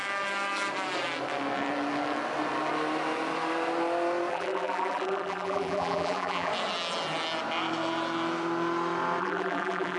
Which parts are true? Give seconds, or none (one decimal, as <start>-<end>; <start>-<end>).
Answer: 0.0-4.3; 6.5-9.2